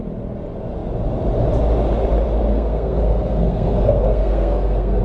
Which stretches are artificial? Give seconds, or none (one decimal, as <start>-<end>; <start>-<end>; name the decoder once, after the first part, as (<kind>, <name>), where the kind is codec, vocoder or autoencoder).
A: 2.5-5.0 (codec, SNAC)